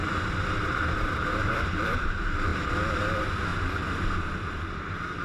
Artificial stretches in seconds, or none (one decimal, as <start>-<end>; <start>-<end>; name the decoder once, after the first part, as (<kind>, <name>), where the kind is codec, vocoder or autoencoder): 0.6-2.5 (vocoder, BigVGAN v2); 3.0-3.5; 4.4-5.2